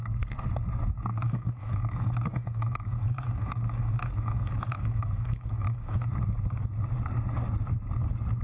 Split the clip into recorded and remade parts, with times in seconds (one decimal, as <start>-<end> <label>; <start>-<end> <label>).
0.0-1.1 recorded; 1.1-6.1 remade; 6.1-8.4 recorded